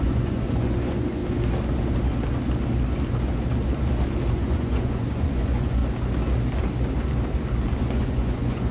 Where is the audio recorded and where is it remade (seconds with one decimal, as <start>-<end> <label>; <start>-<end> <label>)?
0.0-1.2 remade; 1.2-4.3 recorded; 4.3-5.8 remade; 5.8-7.8 recorded; 7.8-8.7 remade